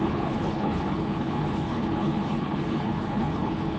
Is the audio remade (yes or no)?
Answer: yes